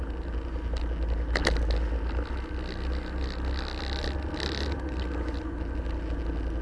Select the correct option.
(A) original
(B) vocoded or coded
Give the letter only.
A